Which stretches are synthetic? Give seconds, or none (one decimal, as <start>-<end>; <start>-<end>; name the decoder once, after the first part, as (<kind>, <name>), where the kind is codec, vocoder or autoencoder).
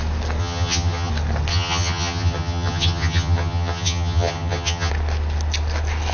0.4-1.1 (vocoder, HiFi-GAN); 1.5-4.9